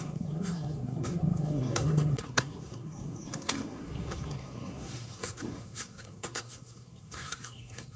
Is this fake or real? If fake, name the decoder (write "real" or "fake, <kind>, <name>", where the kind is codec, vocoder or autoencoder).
fake, codec, SNAC